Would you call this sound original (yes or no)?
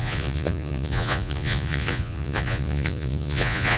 no